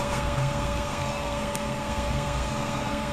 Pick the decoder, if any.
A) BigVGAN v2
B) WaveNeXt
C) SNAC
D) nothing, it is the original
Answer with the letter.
C